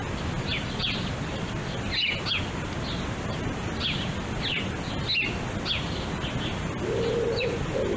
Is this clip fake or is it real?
real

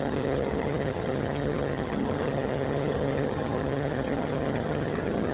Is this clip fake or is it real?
fake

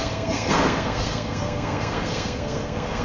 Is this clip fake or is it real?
fake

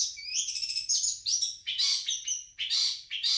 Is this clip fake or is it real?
fake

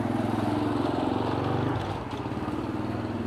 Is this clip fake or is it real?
real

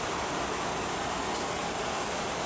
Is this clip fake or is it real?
real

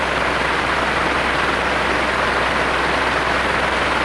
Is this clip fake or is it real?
real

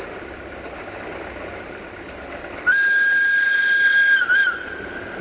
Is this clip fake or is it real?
real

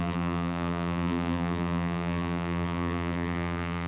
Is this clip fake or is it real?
fake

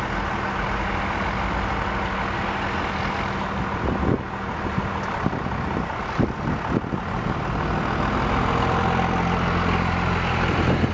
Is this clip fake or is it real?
real